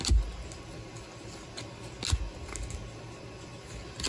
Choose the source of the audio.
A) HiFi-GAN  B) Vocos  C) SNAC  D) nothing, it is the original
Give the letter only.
D